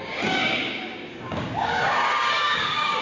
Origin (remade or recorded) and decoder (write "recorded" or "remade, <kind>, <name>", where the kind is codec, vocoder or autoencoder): remade, codec, DAC